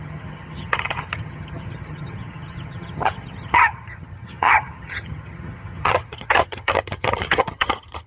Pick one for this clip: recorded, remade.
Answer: remade